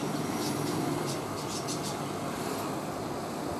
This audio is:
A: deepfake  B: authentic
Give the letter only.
B